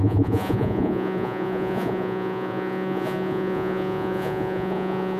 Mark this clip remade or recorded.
remade